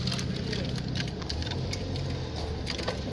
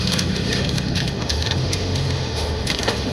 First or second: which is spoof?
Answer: second